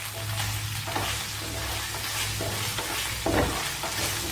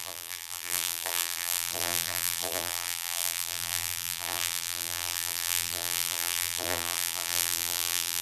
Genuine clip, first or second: first